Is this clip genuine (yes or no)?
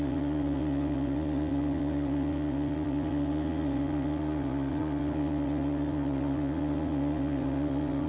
no